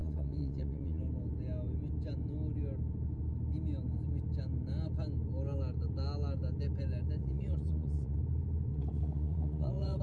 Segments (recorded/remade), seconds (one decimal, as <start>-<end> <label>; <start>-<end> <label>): 0.0-1.0 remade; 1.0-7.2 recorded; 7.2-8.2 remade; 8.2-8.7 recorded; 8.7-10.0 remade